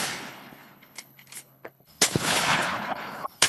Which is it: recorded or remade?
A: remade